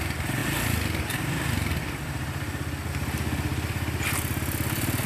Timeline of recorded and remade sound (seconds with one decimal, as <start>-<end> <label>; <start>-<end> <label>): 0.0-5.1 recorded